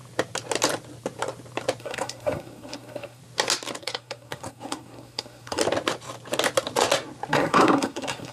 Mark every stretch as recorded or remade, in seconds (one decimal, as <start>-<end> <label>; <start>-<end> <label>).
0.0-1.8 recorded; 1.8-3.2 remade; 3.2-3.8 recorded; 3.8-5.6 remade; 5.6-7.3 recorded; 7.3-8.3 remade